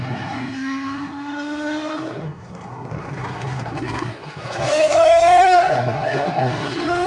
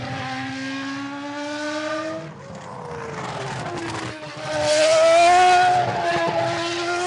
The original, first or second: second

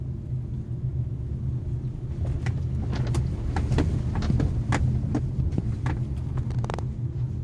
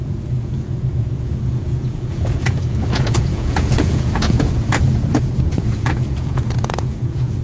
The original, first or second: first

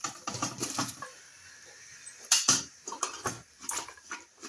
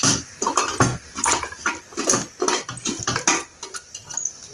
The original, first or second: second